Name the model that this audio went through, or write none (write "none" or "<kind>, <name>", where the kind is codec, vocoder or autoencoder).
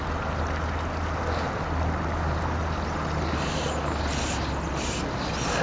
none